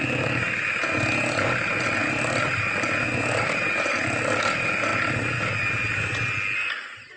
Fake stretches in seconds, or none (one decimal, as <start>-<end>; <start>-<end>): none

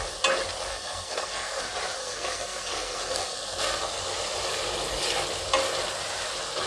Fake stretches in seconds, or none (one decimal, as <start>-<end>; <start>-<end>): 0.7-1.6; 2.0-4.0